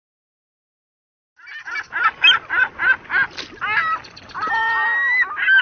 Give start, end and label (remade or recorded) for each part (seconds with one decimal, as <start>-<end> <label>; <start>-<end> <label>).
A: 0.0-5.6 recorded